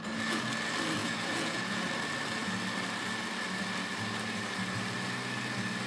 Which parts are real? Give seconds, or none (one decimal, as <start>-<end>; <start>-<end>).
0.0-1.0; 1.8-5.9